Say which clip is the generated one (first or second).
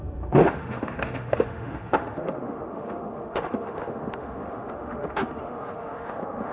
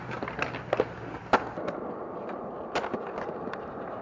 first